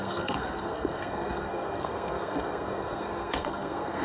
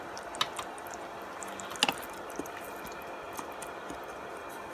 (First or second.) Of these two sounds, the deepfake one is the first